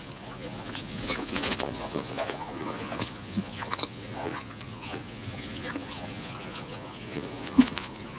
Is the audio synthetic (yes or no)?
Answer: yes